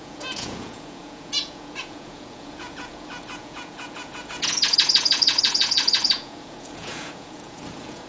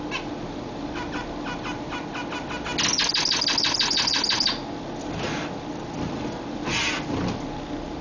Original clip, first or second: second